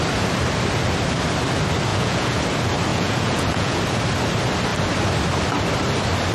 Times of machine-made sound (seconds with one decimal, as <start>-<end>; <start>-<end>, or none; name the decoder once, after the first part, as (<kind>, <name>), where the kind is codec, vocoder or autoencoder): 1.9-2.4 (vocoder, Vocos); 2.9-3.8